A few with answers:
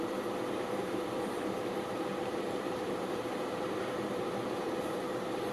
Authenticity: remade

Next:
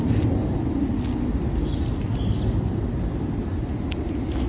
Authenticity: recorded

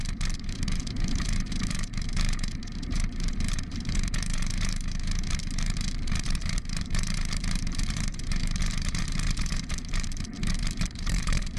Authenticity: remade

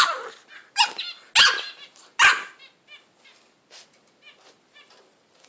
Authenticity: recorded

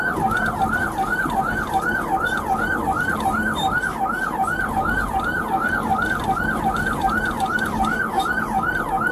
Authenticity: recorded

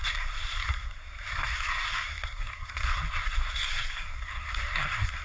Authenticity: remade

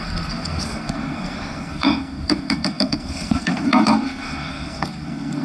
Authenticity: remade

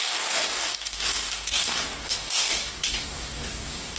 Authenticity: remade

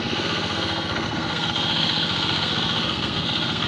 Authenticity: remade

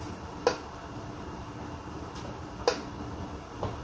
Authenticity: recorded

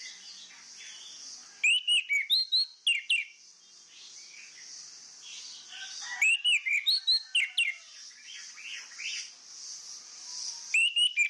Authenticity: recorded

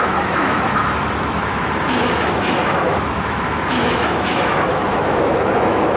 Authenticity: remade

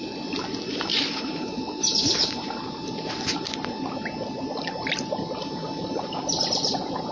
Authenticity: recorded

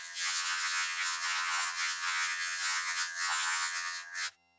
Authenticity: remade